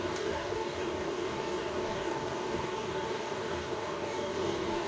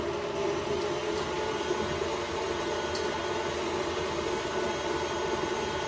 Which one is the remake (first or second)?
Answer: first